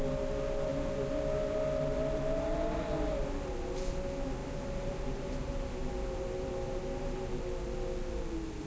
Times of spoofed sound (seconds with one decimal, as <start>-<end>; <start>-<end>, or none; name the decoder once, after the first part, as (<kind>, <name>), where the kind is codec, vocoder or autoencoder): 4.4-7.4 (vocoder, BigVGAN v2)